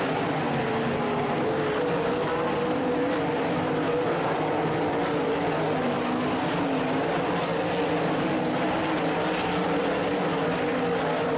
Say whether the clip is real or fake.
real